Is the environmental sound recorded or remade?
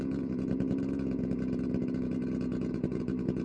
remade